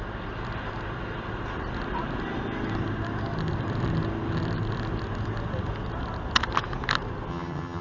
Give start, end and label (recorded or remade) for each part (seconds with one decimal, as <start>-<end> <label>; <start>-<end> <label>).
0.0-7.3 recorded; 7.3-7.8 remade